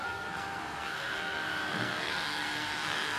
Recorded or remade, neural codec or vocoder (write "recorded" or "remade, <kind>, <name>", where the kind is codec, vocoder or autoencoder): remade, codec, SNAC